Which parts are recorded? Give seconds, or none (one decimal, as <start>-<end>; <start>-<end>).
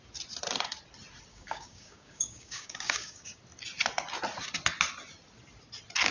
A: 0.0-1.3; 3.4-6.1